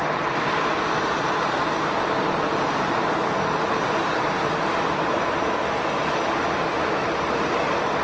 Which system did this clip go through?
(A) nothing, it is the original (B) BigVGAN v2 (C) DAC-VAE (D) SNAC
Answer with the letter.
A